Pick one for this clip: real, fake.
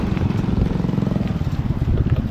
real